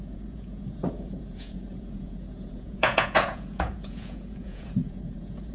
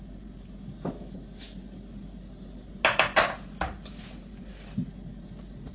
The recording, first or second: second